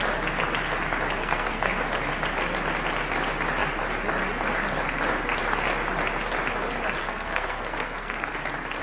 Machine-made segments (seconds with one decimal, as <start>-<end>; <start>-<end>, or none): 1.2-1.7; 7.0-8.3